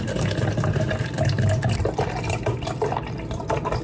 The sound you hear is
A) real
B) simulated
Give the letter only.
A